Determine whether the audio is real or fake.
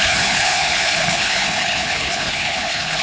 fake